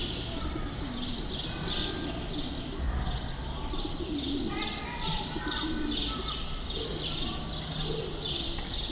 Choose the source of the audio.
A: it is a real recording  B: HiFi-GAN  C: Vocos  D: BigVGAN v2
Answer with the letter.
A